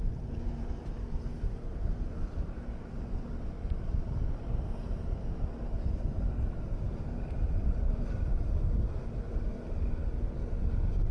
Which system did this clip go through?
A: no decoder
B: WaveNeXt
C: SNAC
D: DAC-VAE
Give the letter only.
A